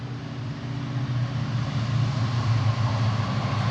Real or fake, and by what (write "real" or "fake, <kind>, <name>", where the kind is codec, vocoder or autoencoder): real